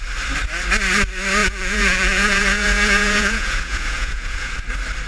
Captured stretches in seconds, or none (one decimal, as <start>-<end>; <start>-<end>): 0.0-1.4; 4.5-5.1